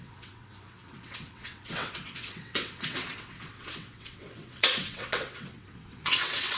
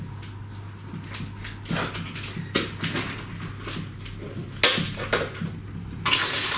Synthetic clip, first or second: first